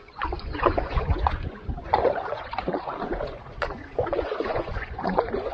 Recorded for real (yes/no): no